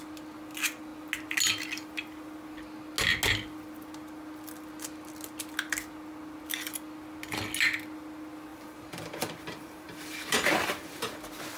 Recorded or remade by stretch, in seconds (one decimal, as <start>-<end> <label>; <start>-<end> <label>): 0.0-8.5 recorded; 8.5-11.2 remade; 11.2-11.6 recorded

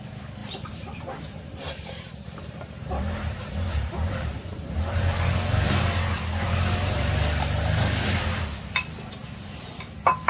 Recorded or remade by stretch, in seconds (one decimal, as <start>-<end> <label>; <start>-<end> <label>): 0.0-0.4 recorded; 0.4-5.1 remade; 5.1-10.3 recorded